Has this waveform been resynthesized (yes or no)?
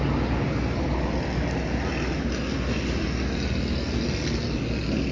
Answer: no